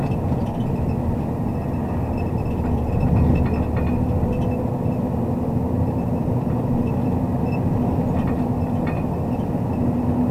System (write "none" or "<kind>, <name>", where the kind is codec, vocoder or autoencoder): none